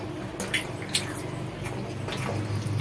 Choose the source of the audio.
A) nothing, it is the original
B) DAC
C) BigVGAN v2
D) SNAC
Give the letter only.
A